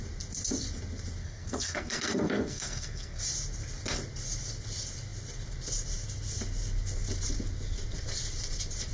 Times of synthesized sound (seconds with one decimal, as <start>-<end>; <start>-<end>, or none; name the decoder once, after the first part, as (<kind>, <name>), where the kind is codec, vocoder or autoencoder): 1.2-3.2 (codec, SNAC)